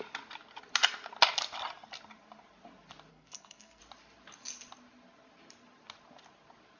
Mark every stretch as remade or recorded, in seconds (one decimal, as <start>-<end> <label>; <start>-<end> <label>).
0.0-3.1 recorded; 3.1-3.8 remade; 3.8-6.8 recorded